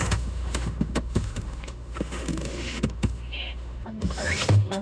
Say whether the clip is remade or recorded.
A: remade